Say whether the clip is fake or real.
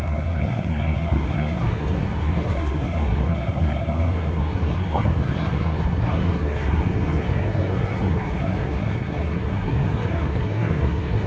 fake